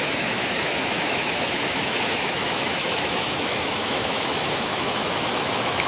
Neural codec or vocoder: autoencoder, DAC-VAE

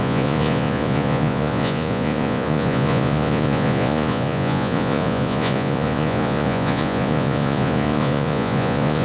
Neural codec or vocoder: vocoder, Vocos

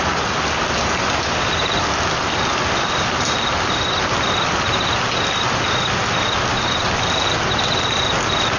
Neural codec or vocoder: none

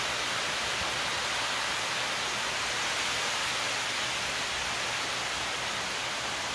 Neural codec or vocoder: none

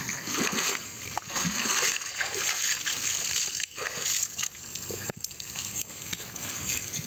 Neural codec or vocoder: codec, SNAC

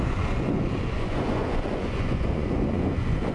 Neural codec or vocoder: vocoder, Vocos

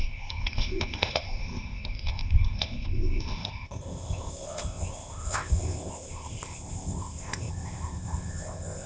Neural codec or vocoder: codec, ZipCodec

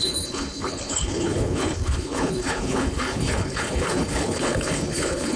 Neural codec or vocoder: codec, HILCodec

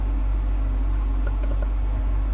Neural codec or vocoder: none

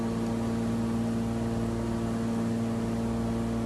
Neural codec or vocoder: none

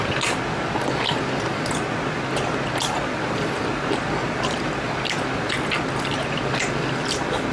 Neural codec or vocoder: none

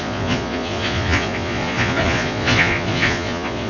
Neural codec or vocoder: vocoder, Vocos